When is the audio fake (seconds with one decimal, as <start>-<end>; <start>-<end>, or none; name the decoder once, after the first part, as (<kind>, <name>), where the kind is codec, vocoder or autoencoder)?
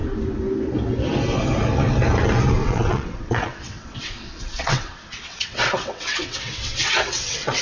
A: 2.6-7.6 (vocoder, WaveNeXt)